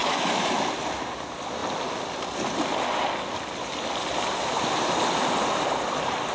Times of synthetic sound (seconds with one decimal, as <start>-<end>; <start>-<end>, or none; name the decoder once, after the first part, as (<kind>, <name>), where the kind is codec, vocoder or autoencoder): 0.0-0.7 (autoencoder, DAC-VAE)